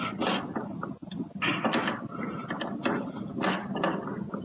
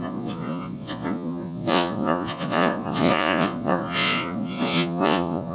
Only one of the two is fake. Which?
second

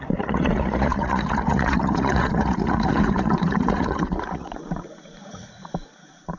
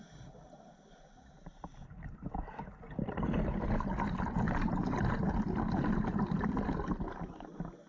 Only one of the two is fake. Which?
first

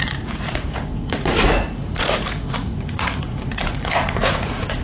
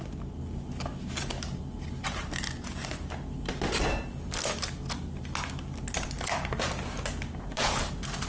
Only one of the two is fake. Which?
first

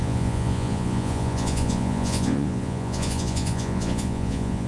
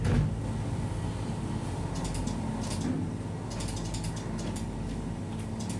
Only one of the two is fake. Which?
first